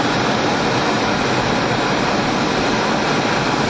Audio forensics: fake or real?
real